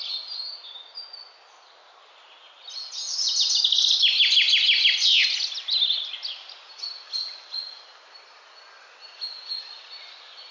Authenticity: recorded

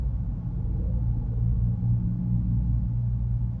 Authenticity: recorded